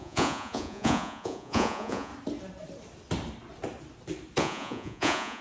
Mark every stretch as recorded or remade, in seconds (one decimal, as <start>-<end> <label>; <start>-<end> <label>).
0.0-2.1 remade; 2.1-4.4 recorded; 4.4-5.4 remade